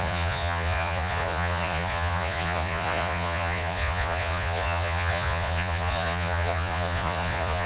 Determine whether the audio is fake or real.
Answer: fake